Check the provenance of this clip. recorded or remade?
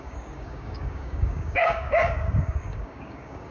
remade